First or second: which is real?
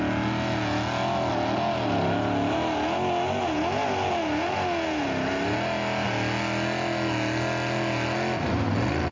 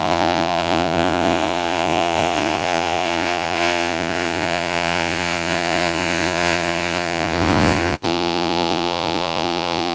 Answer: first